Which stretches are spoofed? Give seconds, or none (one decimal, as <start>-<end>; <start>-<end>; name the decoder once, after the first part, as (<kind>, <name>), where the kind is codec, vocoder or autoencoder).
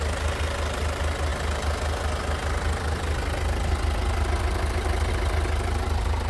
none